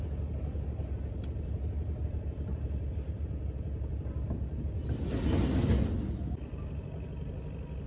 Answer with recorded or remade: recorded